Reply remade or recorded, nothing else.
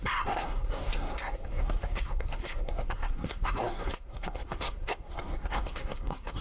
remade